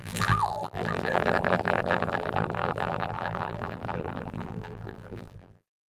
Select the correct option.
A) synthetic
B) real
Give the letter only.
A